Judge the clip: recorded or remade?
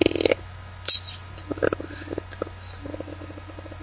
recorded